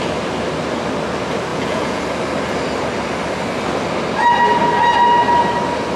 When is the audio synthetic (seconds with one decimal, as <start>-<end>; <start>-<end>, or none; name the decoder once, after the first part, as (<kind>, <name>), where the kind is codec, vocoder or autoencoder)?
1.5-2.0 (vocoder, Vocos)